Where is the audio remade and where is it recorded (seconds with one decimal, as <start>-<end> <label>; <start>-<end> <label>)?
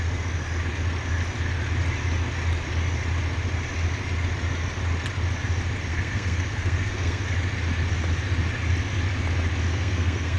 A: 0.0-5.9 recorded; 5.9-7.2 remade; 7.2-9.7 recorded; 9.7-10.4 remade